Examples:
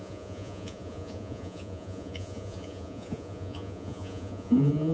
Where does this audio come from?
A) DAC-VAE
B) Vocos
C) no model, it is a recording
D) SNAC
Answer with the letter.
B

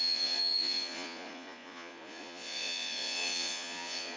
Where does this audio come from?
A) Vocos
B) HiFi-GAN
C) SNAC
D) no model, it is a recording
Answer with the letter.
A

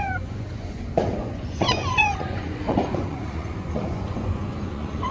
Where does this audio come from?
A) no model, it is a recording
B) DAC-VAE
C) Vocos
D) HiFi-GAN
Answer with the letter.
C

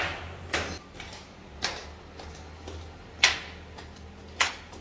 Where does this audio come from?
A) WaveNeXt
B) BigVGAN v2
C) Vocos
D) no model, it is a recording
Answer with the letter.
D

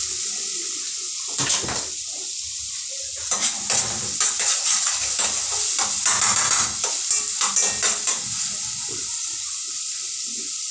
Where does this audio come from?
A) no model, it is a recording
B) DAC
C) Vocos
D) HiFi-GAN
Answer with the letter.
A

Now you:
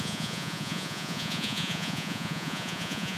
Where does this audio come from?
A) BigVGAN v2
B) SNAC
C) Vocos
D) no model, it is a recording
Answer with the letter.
C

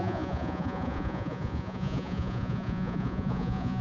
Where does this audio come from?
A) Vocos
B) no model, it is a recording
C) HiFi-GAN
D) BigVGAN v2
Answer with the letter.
A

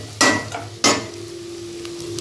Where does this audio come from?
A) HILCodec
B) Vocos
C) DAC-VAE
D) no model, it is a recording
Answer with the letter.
D